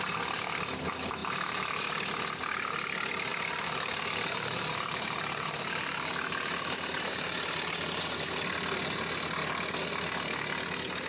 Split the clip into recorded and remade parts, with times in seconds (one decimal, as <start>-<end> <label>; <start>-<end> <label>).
0.0-1.2 recorded; 1.2-2.0 remade; 2.0-3.3 recorded; 3.3-8.0 remade; 8.0-11.1 recorded